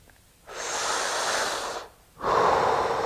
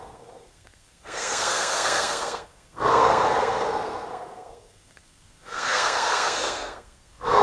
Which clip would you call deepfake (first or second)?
second